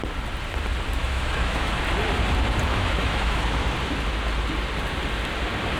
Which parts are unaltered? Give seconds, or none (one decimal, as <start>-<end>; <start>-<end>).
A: 0.0-1.0; 1.7-2.7; 3.4-5.8

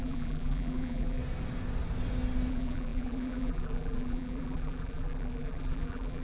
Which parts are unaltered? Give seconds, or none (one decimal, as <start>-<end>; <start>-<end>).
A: 1.2-2.5

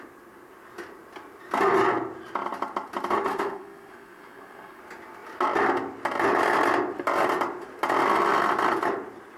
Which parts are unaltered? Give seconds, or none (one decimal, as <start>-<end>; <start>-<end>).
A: 0.0-3.3; 4.8-9.4

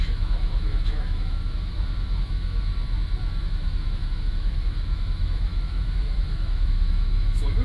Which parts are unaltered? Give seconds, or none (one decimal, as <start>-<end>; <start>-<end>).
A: 2.7-3.4

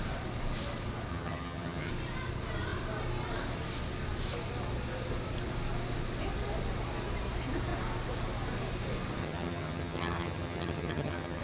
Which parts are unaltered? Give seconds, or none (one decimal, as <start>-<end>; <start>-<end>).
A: 0.0-1.1; 1.9-9.2